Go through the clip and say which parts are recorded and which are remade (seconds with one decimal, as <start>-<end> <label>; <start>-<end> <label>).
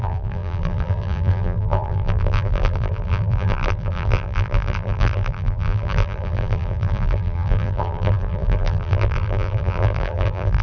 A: 0.0-10.6 remade